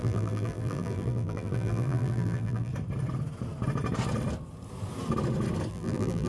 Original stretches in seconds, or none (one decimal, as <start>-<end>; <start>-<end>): 2.7-5.7